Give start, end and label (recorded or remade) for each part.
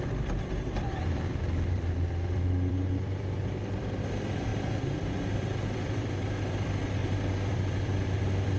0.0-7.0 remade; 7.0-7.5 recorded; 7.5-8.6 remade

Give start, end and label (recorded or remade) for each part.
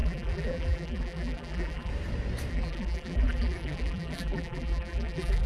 0.0-1.9 remade; 1.9-2.5 recorded; 2.5-5.5 remade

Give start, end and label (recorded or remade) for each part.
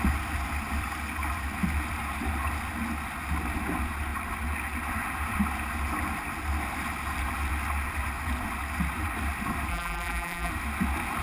0.0-9.7 recorded; 9.7-10.5 remade; 10.5-11.2 recorded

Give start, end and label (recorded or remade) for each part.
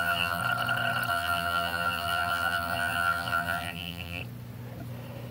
0.0-0.4 remade; 0.4-1.1 recorded; 1.1-4.2 remade; 4.2-5.3 recorded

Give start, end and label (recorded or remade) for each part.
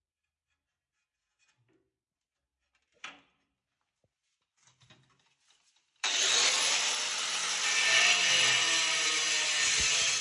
0.0-2.5 recorded; 2.5-6.7 remade; 6.7-10.2 recorded